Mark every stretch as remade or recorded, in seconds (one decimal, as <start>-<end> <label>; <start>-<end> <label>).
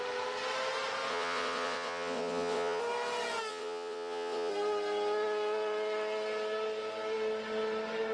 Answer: 0.0-1.1 recorded; 1.1-2.8 remade; 2.8-3.5 recorded; 3.5-4.5 remade; 4.5-8.1 recorded